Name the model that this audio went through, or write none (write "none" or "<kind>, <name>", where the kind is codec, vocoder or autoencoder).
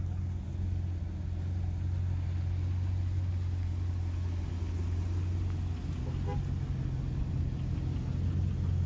none